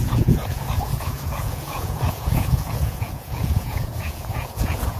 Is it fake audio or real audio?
fake